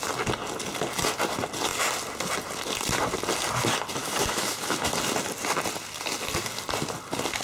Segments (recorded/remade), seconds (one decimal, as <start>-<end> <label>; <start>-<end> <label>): 0.0-4.0 recorded; 4.0-4.9 remade; 4.9-7.4 recorded